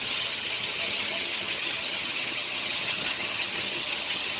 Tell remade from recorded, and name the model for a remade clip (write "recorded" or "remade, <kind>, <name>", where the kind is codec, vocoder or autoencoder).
remade, vocoder, HiFi-GAN